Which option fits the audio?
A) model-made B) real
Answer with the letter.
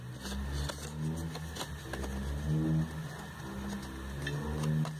B